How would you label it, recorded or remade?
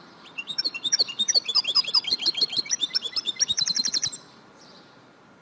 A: remade